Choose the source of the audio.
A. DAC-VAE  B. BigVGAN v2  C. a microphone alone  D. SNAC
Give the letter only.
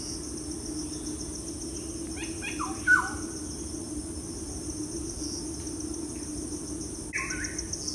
C